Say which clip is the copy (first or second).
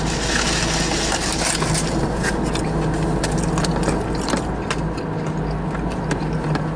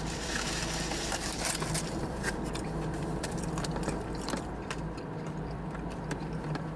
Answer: second